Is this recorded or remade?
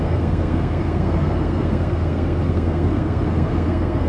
remade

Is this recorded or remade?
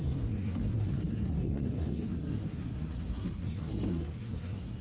remade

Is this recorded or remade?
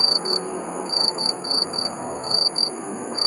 remade